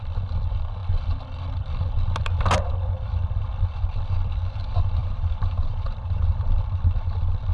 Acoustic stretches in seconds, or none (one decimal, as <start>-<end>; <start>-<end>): 0.0-5.0; 6.8-7.5